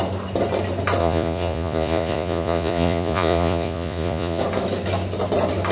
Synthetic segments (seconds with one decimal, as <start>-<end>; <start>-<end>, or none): 1.0-4.4